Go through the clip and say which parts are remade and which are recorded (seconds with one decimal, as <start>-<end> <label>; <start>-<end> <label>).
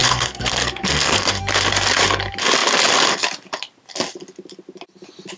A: 0.0-1.4 remade; 1.4-5.4 recorded